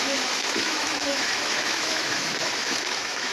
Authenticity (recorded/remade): remade